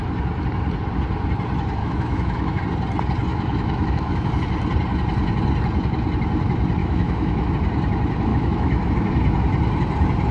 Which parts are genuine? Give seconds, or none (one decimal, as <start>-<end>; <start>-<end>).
0.0-1.8; 2.6-3.3; 4.3-6.8; 7.5-8.3; 8.8-10.3